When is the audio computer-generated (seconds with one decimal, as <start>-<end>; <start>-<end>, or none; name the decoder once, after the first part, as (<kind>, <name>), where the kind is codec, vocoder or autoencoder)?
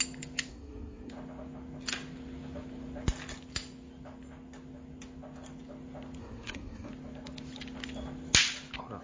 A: 0.5-1.1 (codec, SNAC); 6.2-6.9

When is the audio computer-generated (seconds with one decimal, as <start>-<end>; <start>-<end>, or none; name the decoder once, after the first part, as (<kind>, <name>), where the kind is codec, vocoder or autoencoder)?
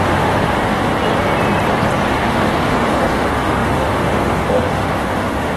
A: 0.0-0.9 (autoencoder, DAC-VAE); 2.1-5.6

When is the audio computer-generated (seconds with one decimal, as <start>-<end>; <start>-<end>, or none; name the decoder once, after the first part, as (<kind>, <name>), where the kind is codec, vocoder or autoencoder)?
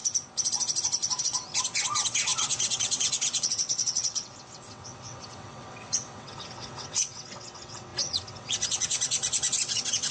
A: 1.2-10.1 (vocoder, WaveNeXt)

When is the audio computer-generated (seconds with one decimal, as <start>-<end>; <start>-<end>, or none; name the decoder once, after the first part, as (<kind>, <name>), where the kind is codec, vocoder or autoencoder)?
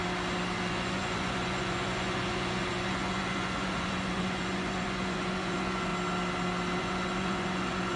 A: 0.7-5.9 (vocoder, Vocos); 6.8-8.0